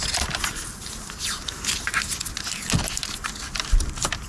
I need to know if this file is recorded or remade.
recorded